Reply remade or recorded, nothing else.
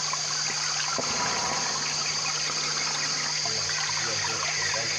recorded